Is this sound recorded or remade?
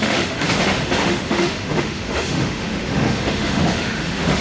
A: remade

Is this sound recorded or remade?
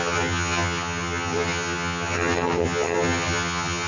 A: remade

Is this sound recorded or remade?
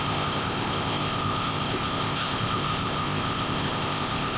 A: remade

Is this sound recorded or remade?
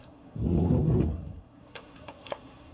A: remade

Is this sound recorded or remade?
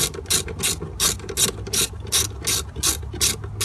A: recorded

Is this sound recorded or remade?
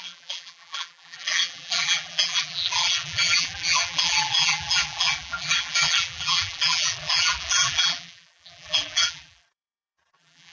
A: remade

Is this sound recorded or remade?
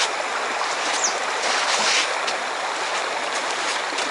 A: recorded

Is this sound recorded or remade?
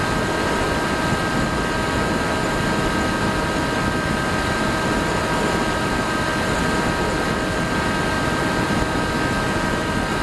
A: recorded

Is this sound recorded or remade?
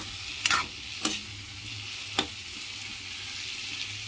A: recorded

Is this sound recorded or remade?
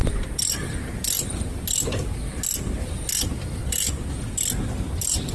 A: recorded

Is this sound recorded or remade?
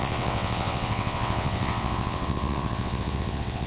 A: remade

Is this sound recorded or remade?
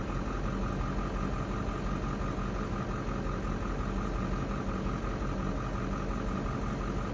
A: recorded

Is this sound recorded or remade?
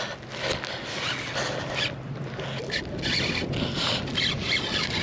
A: recorded